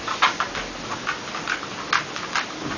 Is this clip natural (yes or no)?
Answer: yes